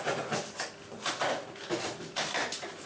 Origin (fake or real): real